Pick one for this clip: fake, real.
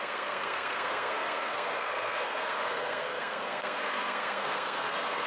fake